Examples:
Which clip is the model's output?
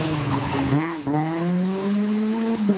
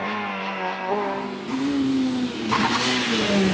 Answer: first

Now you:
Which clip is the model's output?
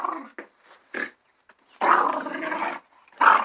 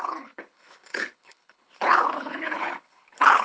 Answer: second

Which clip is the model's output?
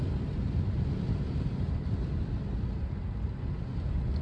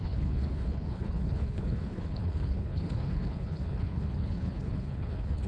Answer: second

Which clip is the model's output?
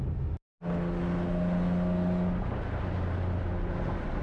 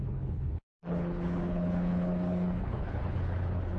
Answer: second